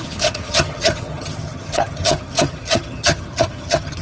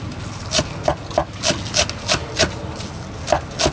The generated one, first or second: first